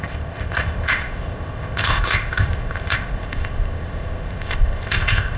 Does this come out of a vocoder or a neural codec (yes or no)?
yes